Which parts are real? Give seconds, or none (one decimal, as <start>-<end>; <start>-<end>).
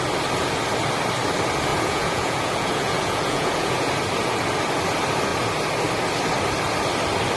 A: 0.0-1.7; 3.9-7.4